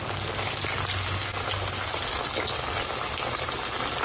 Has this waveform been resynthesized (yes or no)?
no